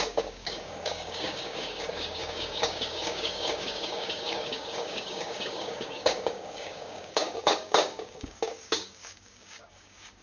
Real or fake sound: fake